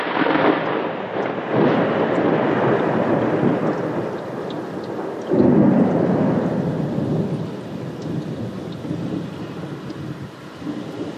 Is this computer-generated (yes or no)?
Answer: no